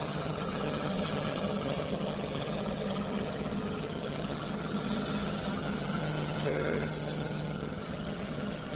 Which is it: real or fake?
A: fake